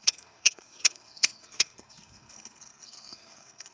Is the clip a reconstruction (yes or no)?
yes